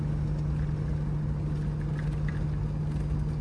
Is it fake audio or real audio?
real